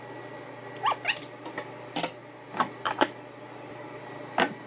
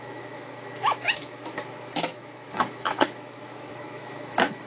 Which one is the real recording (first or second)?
first